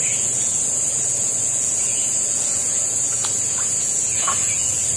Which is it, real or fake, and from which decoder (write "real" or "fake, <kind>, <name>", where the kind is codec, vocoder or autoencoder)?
fake, vocoder, Vocos